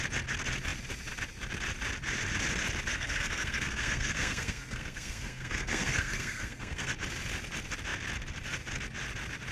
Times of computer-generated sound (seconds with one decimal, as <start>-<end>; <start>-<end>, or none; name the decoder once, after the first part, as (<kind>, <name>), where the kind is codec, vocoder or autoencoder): 2.9-6.9 (codec, SNAC)